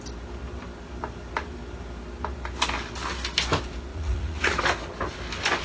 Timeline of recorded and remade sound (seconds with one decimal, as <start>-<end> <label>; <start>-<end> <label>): 0.0-3.9 recorded; 3.9-4.6 remade; 4.6-5.6 recorded